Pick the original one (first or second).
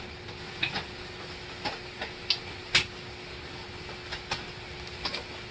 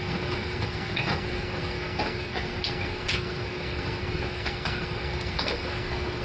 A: first